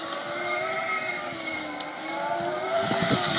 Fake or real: real